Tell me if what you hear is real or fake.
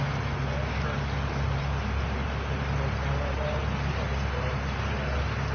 real